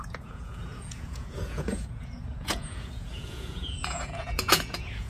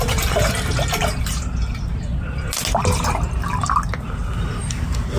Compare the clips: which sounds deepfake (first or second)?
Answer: first